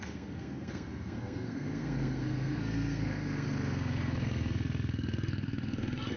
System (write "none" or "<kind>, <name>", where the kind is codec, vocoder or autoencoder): codec, SNAC